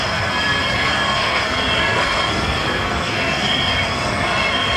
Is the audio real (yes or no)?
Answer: no